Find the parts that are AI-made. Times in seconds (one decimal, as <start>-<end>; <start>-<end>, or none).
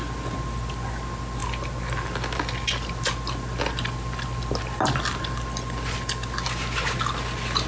none